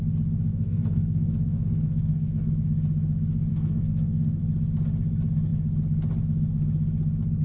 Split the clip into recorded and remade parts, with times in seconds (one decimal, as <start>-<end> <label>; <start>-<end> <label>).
0.0-0.5 recorded; 0.5-2.5 remade; 2.5-3.5 recorded; 3.5-4.4 remade; 4.4-7.4 recorded